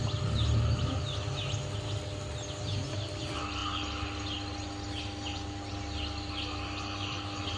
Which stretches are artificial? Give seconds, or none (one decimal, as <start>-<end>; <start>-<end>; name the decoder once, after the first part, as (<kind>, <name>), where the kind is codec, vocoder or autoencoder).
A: none